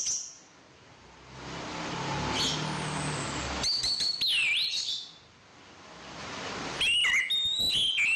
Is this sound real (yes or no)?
yes